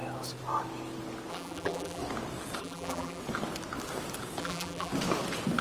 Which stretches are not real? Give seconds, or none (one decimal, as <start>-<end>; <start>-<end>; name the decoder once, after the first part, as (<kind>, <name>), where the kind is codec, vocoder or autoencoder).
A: 1.3-2.0 (vocoder, BigVGAN v2); 2.6-3.2; 4.4-4.9